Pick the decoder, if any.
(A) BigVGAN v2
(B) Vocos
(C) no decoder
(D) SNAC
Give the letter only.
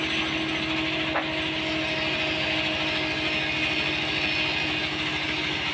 C